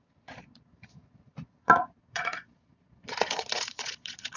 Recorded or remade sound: remade